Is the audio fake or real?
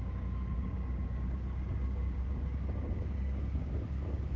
fake